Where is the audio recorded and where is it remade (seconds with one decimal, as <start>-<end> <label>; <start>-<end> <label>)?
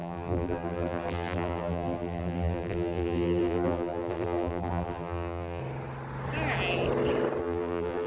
0.0-5.6 remade; 5.6-7.4 recorded; 7.4-8.1 remade